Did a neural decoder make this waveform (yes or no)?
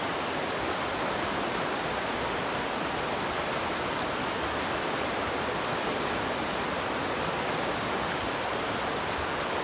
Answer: no